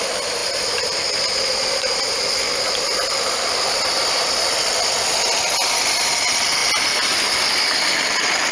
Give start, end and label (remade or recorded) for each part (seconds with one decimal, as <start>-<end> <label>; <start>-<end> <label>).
0.0-8.5 recorded